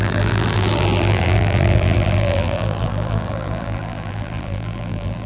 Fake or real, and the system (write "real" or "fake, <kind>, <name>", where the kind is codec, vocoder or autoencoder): fake, vocoder, BigVGAN v2